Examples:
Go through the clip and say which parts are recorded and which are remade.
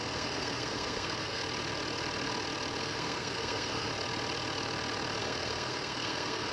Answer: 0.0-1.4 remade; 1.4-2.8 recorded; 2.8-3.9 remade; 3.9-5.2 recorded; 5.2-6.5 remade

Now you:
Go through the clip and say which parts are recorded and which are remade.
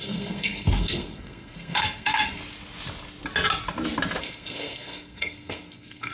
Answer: 0.0-2.4 remade; 2.4-4.2 recorded; 4.2-6.1 remade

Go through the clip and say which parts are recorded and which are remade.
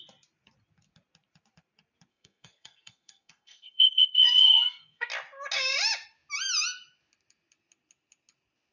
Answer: 0.0-2.1 recorded; 2.1-5.1 remade; 5.1-8.7 recorded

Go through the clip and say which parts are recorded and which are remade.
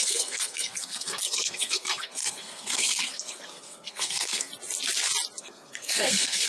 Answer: 0.0-4.5 remade; 4.5-5.4 recorded; 5.4-6.5 remade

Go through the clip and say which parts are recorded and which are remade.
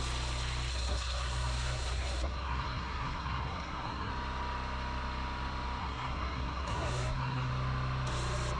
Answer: 0.0-0.7 recorded; 0.7-4.1 remade; 4.1-5.8 recorded; 5.8-7.5 remade; 7.5-8.6 recorded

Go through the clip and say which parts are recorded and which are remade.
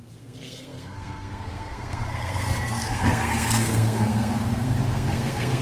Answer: 0.0-5.6 remade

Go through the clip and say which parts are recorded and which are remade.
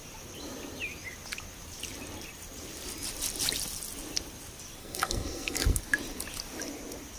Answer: 0.0-4.8 recorded; 4.8-5.8 remade; 5.8-7.2 recorded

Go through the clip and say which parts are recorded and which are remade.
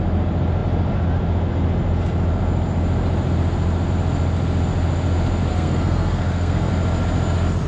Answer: 0.0-5.5 recorded; 5.5-6.7 remade; 6.7-7.7 recorded